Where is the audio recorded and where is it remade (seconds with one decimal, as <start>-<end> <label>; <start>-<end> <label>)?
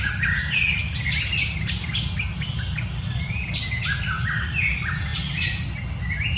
0.0-6.4 recorded